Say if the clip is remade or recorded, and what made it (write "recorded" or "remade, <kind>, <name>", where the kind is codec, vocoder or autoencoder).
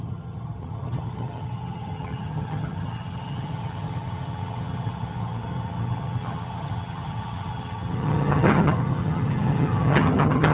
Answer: remade, vocoder, HiFi-GAN